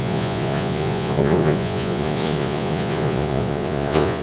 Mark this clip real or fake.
fake